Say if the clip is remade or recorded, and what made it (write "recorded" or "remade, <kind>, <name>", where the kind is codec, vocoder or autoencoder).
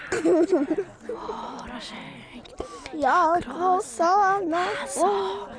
recorded